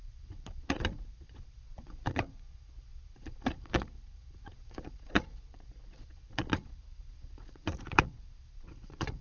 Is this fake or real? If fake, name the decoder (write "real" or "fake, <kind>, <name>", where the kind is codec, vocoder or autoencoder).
fake, vocoder, Vocos